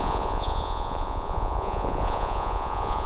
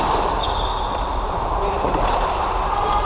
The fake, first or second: first